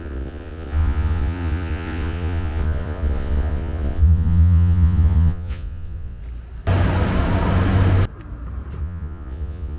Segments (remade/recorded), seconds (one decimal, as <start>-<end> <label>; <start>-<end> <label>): 0.0-6.2 remade; 6.2-8.8 recorded; 8.8-9.8 remade